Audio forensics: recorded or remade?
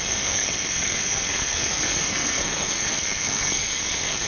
remade